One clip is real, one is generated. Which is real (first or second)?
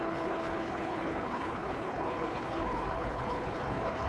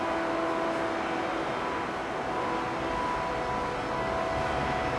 second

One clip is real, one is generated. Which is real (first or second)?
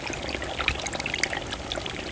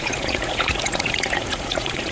first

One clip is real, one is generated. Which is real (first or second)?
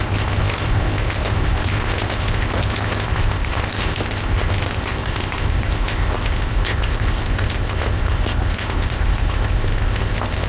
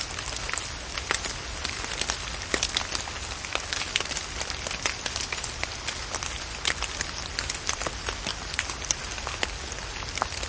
second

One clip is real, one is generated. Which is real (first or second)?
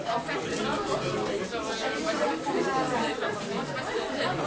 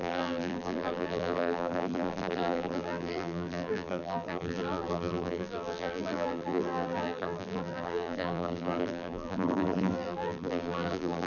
first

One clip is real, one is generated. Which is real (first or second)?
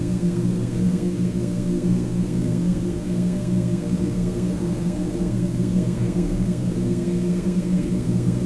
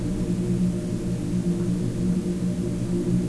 second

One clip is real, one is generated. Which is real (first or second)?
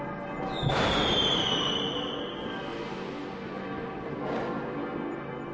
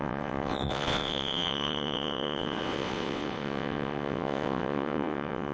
first